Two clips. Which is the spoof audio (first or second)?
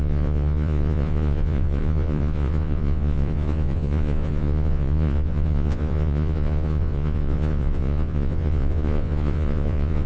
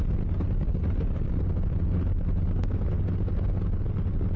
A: first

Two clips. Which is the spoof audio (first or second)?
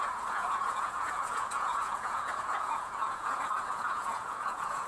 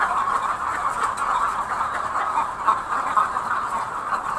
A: first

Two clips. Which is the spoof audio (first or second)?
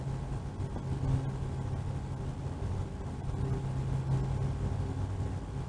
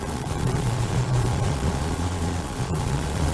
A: second